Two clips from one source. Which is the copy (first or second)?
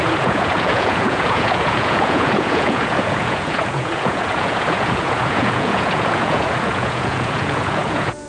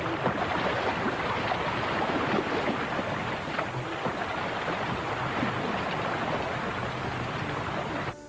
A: first